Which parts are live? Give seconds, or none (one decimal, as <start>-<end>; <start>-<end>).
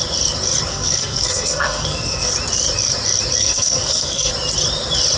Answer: 0.0-0.7; 2.3-3.4; 4.3-5.2